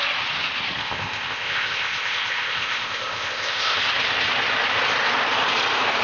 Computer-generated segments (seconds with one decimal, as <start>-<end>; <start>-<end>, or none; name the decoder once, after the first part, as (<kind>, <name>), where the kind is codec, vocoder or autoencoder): 0.8-3.8 (codec, ZipCodec)